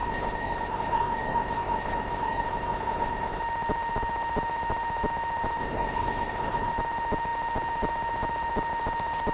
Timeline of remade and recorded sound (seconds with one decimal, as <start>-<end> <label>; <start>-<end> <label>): 0.0-3.4 remade; 3.4-5.6 recorded; 5.6-6.7 remade; 6.7-9.3 recorded